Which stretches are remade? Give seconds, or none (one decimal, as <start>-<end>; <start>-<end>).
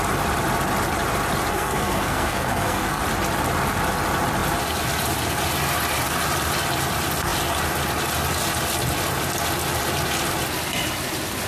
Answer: 1.5-3.0